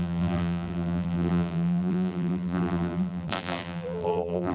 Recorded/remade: remade